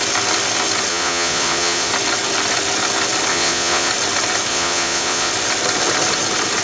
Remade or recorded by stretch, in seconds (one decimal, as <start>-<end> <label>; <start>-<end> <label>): 0.0-0.9 recorded; 0.9-1.9 remade; 1.9-3.3 recorded; 3.3-3.9 remade; 3.9-4.5 recorded; 4.5-5.3 remade; 5.3-6.6 recorded